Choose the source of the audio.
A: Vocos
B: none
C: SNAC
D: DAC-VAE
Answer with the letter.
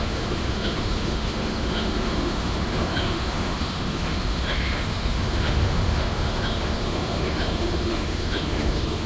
D